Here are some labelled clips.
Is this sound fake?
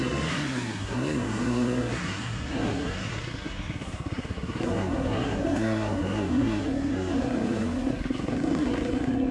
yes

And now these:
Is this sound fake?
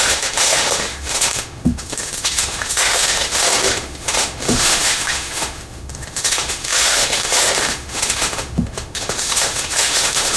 yes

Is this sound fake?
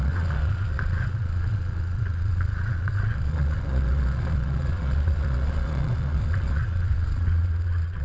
yes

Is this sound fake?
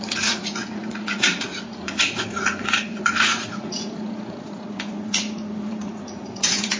yes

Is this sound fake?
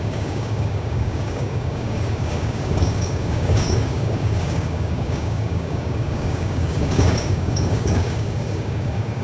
yes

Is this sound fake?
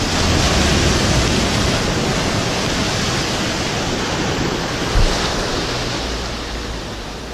no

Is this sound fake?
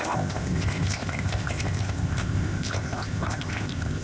yes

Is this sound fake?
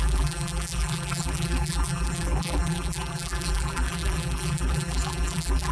yes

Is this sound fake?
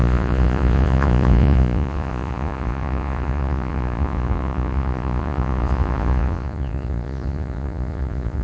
yes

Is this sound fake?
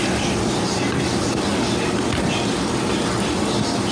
no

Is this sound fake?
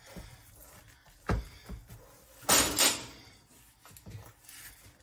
no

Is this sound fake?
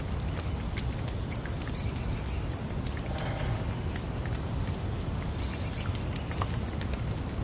no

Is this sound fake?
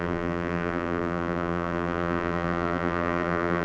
yes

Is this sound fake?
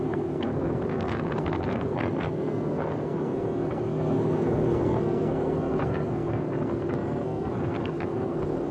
yes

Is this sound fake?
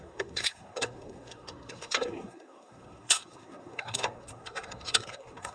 yes